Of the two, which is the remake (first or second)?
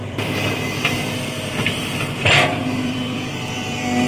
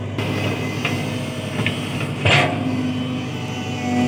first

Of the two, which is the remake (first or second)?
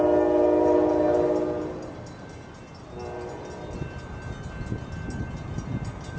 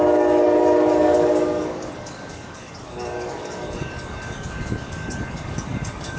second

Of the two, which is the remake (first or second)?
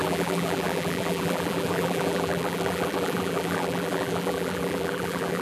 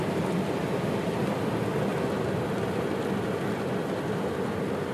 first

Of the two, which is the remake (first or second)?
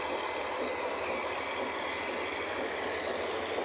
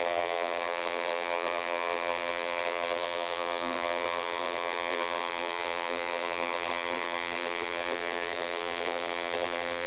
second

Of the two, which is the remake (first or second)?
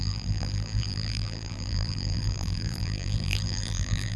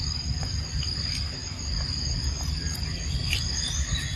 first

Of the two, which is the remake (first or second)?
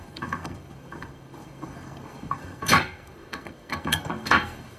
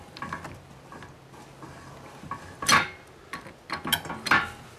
first